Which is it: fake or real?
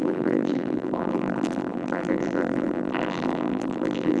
fake